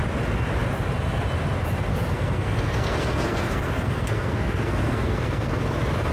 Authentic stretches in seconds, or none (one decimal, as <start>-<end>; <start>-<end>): 0.0-1.9; 5.6-6.1